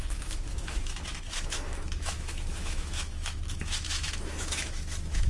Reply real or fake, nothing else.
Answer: fake